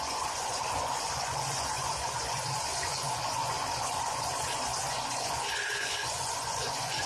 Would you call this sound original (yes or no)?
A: no